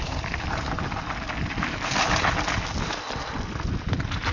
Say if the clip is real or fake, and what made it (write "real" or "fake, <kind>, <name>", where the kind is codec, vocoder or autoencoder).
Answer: real